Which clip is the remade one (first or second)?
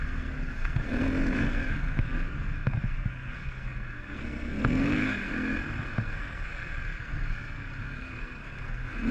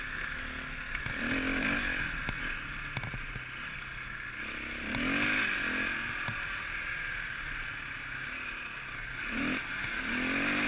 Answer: first